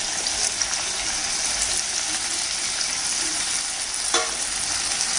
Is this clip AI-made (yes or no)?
no